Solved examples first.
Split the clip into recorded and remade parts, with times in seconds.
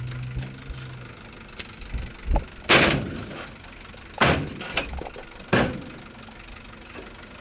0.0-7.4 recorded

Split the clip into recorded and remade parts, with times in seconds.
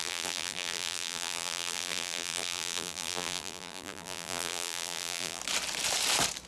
0.0-5.4 remade; 5.4-6.5 recorded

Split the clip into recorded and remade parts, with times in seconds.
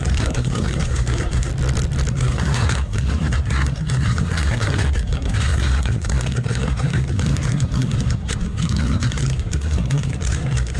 0.0-1.5 remade; 1.5-2.1 recorded; 2.1-10.8 remade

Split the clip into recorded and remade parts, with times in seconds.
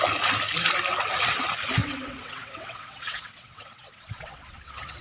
0.0-1.8 recorded; 1.8-5.0 remade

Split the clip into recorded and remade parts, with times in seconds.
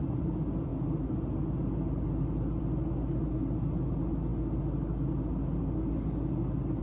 0.0-6.8 recorded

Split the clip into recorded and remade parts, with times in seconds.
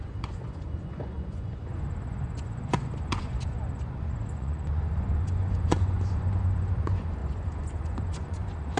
0.0-8.8 remade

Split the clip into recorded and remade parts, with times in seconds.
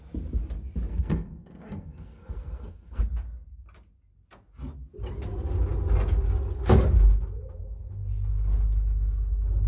0.0-0.9 recorded; 0.9-3.0 remade; 3.0-9.7 recorded